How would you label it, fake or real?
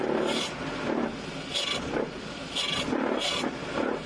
real